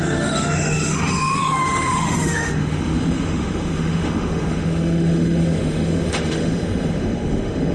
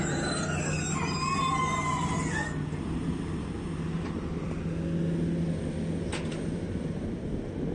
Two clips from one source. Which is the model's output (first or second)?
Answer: first